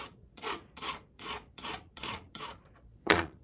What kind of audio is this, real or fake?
fake